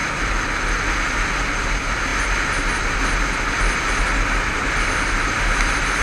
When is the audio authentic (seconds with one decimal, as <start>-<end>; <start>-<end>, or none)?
0.0-6.0